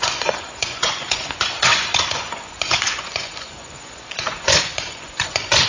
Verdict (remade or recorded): remade